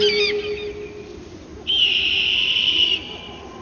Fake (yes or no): no